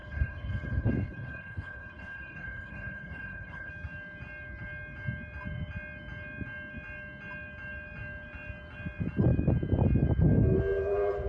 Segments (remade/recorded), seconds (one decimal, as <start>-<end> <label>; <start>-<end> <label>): 0.0-3.7 remade; 3.7-11.3 recorded